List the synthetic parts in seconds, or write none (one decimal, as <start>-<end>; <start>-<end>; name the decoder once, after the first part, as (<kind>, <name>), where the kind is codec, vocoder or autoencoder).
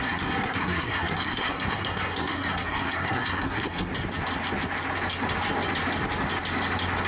0.0-3.9 (codec, SNAC)